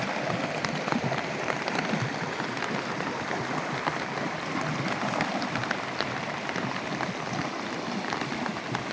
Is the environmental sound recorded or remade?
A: recorded